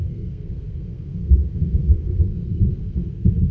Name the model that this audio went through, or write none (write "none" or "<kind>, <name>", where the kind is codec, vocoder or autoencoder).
codec, SNAC